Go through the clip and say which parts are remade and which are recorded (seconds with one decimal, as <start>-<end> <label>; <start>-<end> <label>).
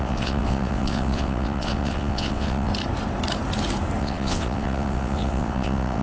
0.0-2.7 remade; 2.7-4.0 recorded; 4.0-6.0 remade